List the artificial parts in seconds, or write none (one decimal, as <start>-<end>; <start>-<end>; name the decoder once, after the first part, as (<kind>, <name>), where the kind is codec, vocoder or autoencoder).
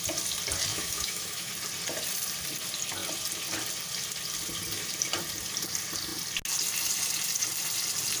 0.7-1.5 (autoencoder, DAC-VAE)